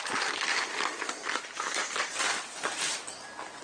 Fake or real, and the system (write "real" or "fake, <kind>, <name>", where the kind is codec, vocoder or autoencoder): real